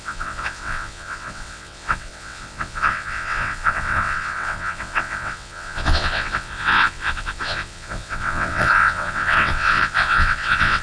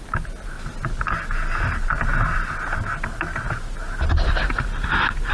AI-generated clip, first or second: first